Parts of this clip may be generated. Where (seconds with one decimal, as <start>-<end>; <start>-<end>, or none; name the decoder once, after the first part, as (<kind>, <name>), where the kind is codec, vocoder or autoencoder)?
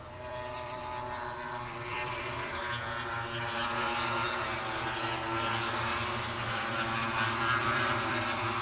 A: 0.0-0.8 (vocoder, BigVGAN v2); 1.9-2.6; 7.6-8.6